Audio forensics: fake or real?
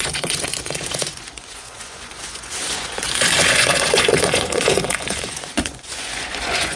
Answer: fake